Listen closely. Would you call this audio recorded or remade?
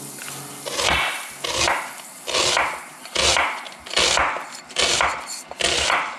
recorded